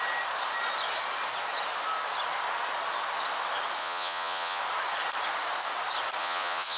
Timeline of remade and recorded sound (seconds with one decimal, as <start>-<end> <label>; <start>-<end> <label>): 0.0-3.8 recorded; 3.8-4.6 remade; 4.6-6.2 recorded; 6.2-6.8 remade